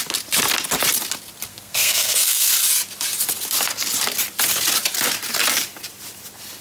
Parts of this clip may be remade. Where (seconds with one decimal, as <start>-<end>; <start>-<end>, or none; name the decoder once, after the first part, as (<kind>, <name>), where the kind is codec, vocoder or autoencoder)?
1.5-2.5 (codec, SNAC)